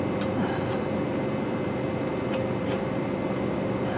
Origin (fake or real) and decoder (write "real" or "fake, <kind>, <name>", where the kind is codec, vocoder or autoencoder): real